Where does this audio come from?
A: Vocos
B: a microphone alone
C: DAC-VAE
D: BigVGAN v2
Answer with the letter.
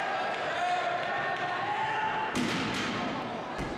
B